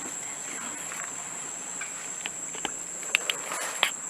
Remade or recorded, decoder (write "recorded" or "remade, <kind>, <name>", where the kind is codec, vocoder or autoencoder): recorded